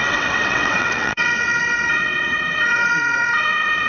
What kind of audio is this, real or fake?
fake